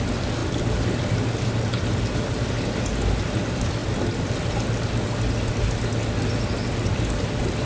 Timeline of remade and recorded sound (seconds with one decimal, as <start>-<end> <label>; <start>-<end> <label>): 0.0-7.7 recorded